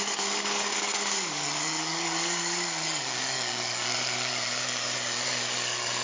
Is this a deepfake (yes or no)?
yes